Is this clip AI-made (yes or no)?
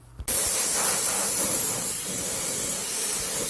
no